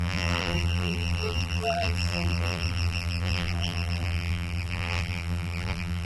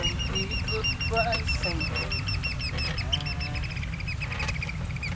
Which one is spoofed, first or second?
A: first